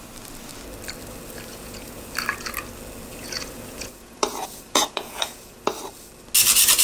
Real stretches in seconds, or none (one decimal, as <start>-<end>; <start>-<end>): 0.0-1.5; 2.1-3.1; 5.7-6.8